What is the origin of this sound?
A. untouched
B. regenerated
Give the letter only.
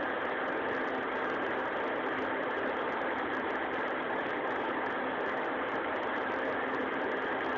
A